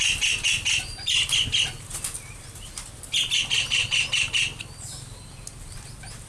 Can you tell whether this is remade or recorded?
recorded